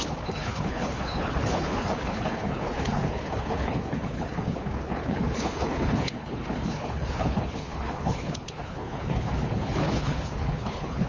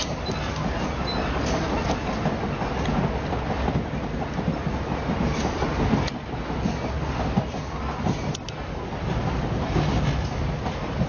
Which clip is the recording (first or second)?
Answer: second